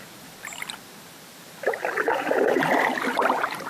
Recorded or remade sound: recorded